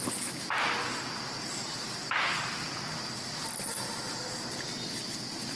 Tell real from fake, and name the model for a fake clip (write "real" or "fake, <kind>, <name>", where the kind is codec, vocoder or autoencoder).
real